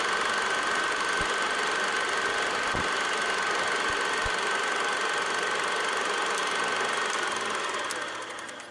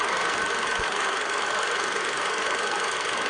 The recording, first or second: first